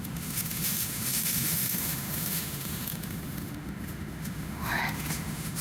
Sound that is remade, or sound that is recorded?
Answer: remade